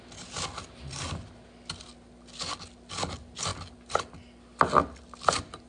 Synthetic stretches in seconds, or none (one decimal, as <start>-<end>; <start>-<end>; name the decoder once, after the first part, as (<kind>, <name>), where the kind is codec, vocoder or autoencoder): none